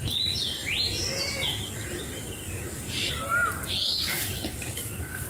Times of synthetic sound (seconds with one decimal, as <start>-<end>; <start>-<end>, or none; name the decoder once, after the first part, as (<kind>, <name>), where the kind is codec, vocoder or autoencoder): 2.4-3.2 (codec, DAC); 3.9-5.3